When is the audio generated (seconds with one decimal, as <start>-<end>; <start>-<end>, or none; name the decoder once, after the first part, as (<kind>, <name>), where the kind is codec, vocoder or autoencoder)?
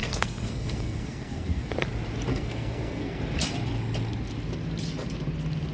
0.0-1.7 (codec, SNAC); 2.3-3.2